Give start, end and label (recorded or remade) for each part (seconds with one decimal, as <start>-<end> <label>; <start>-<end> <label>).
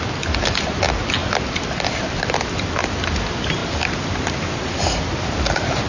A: 0.0-5.9 recorded